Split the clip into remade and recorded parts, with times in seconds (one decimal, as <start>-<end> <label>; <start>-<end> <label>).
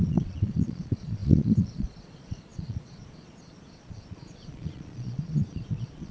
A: 0.0-6.1 remade